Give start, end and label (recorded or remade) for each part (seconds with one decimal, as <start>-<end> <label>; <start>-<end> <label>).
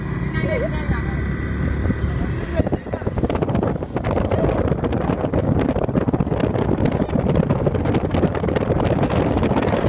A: 0.0-9.9 recorded